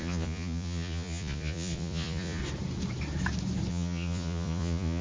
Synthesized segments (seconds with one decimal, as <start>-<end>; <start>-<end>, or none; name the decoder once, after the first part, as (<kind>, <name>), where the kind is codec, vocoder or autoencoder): 0.0-2.4 (vocoder, Vocos); 3.7-5.0